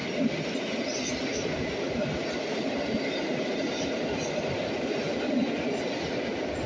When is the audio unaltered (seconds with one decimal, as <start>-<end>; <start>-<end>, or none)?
0.0-6.7